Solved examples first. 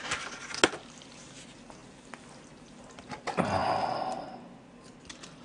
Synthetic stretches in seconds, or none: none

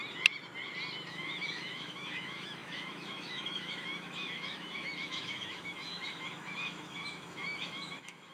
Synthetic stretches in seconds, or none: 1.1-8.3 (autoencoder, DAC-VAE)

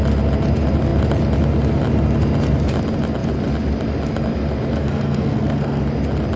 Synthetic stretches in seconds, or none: 4.8-5.8 (codec, SNAC)